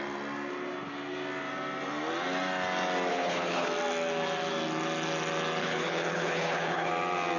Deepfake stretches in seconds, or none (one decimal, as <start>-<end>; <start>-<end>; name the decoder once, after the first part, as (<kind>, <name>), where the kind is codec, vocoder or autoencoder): 3.1-3.7 (codec, HILCodec); 5.6-6.9